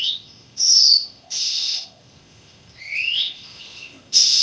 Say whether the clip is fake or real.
fake